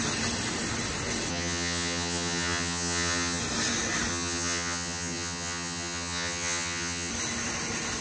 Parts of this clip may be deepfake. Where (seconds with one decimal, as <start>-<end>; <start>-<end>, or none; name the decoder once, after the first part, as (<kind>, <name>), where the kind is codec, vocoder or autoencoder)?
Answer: 1.3-3.4 (vocoder, HiFi-GAN); 4.1-7.1